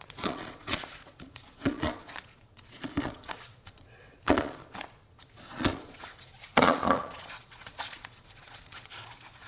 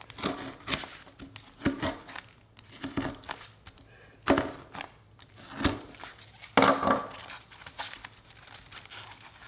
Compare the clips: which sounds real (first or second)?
second